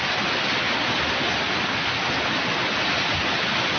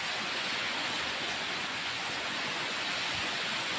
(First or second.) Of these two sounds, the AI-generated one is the second